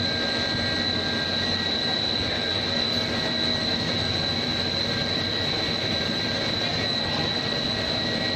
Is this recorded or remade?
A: recorded